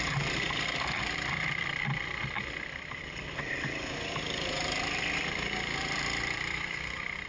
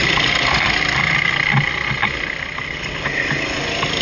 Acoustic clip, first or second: second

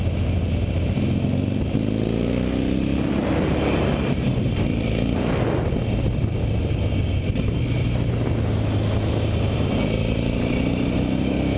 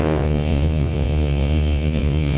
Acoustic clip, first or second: first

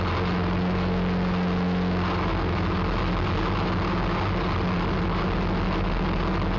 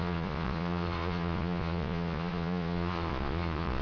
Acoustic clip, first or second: first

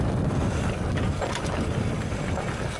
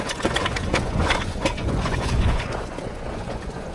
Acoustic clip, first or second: first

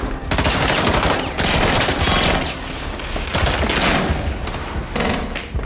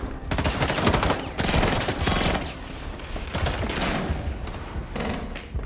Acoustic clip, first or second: first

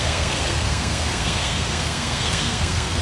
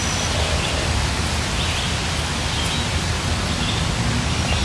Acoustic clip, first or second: second